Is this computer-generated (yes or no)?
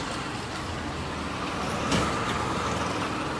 no